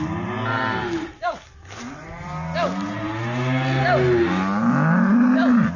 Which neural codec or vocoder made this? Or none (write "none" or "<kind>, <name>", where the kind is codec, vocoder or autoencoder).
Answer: none